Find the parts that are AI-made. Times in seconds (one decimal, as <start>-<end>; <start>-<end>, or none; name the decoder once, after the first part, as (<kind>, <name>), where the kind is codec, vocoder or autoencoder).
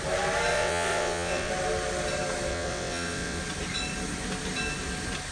0.5-1.5 (vocoder, WaveNeXt); 2.5-3.4